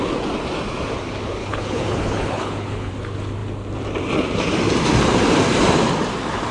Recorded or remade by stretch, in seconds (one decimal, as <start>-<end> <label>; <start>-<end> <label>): 0.0-1.4 recorded; 1.4-2.9 remade; 2.9-6.5 recorded